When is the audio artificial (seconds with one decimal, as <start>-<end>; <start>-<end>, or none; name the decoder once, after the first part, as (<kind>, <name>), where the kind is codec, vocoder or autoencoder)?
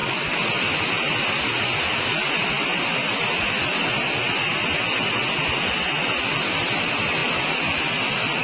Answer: 0.0-0.8 (vocoder, BigVGAN v2); 7.2-8.4